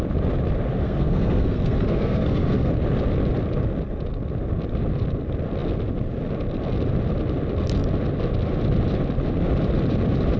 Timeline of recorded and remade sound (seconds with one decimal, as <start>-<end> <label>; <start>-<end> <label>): 0.0-0.8 recorded; 0.8-2.7 remade; 2.7-10.4 recorded